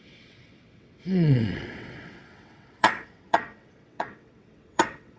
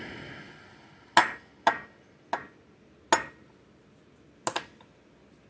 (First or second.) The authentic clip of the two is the second